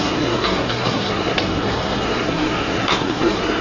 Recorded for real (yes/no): no